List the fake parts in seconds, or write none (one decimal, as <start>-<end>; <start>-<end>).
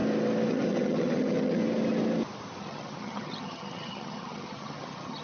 0.5-1.6; 2.6-5.2